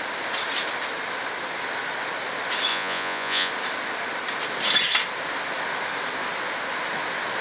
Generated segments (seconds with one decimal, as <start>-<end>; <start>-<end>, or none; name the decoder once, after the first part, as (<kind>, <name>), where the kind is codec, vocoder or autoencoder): 2.7-3.5 (vocoder, Vocos)

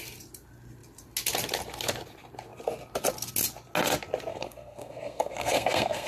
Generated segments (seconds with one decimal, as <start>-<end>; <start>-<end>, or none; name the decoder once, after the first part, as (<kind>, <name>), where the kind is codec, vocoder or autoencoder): 4.3-6.1 (codec, SNAC)